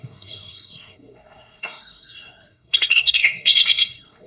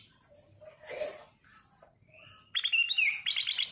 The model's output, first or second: first